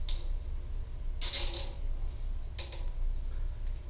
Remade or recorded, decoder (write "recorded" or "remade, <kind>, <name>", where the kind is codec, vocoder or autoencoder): recorded